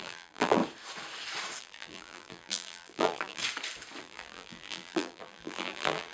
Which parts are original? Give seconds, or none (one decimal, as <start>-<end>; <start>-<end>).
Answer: 0.6-1.6; 3.4-4.0